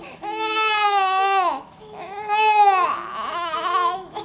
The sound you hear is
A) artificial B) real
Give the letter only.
A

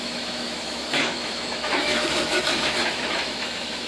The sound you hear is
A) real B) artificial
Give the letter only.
B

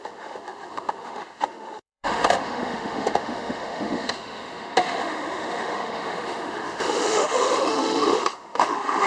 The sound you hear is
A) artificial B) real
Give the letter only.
A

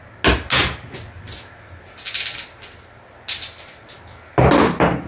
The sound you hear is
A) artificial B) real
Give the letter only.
B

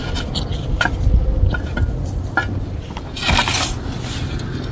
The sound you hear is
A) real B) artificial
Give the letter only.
A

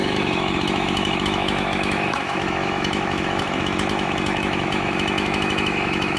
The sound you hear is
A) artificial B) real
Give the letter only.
A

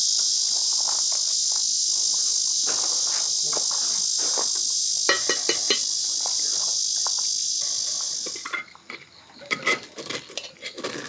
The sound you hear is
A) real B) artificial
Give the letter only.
A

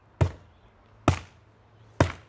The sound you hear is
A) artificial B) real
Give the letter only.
B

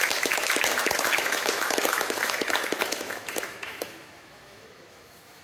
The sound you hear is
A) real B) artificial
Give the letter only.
B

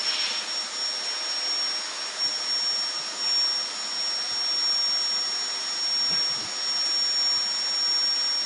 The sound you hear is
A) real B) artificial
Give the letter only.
A